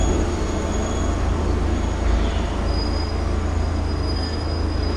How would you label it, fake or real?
real